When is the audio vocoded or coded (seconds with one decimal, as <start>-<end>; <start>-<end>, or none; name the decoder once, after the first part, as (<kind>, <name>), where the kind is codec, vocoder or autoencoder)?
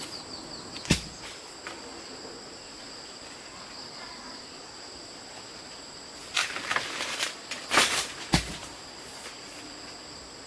6.2-8.8 (vocoder, BigVGAN v2)